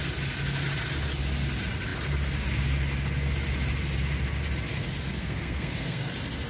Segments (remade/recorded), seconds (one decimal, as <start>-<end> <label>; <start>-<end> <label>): 0.0-5.1 recorded; 5.1-6.1 remade; 6.1-6.5 recorded

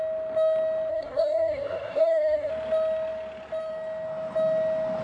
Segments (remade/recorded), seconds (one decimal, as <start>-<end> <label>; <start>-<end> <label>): 0.0-0.9 recorded; 0.9-2.5 remade; 2.5-5.0 recorded